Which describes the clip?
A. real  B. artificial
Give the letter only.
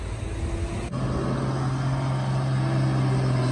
A